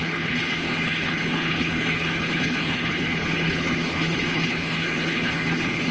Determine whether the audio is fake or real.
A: fake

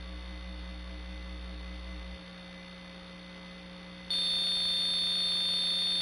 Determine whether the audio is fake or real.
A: real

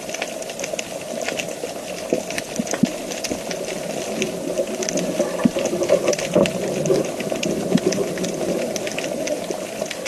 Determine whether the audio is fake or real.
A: real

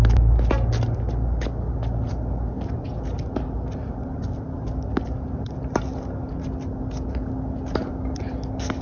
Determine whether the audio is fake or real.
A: real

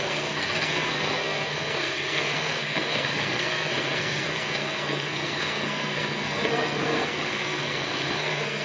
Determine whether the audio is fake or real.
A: fake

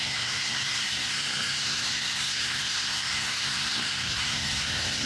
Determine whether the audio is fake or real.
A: fake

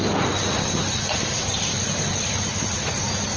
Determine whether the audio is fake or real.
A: real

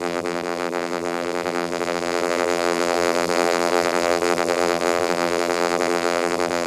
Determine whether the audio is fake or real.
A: fake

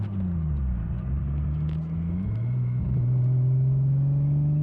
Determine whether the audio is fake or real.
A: real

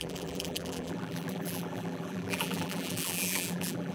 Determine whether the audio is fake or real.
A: fake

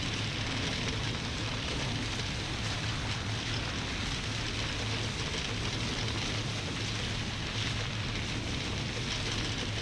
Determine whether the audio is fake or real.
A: real